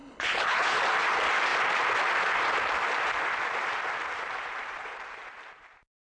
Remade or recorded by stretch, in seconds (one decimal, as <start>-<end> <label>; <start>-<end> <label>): 0.0-0.8 remade; 0.8-6.1 recorded